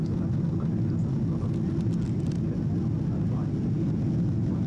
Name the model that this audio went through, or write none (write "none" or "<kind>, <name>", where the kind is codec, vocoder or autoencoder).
none